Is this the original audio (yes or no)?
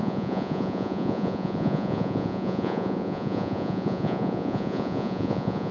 no